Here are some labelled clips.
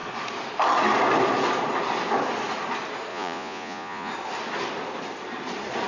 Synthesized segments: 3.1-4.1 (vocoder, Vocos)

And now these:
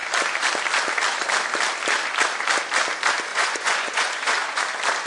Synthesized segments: 3.3-4.6 (vocoder, Vocos)

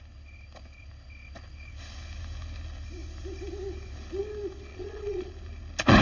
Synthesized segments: 4.7-5.3 (vocoder, Vocos)